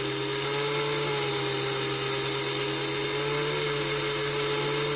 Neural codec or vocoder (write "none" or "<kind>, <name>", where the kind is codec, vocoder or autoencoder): none